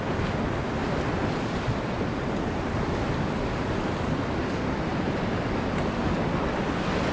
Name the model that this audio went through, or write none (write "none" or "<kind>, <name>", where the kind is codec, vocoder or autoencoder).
none